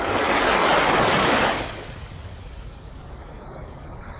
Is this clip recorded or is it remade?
remade